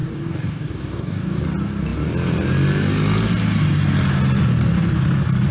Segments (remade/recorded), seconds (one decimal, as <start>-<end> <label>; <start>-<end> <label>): 0.0-1.4 remade; 1.4-5.5 recorded